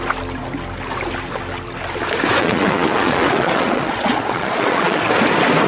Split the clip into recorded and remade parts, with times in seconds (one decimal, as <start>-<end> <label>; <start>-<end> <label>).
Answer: 0.0-2.4 recorded; 2.4-5.1 remade; 5.1-5.7 recorded